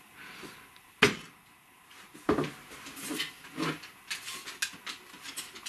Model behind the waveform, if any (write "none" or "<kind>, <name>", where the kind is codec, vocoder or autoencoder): none